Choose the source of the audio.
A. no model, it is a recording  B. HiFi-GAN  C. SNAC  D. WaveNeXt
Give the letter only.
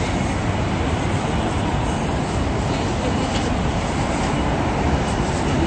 A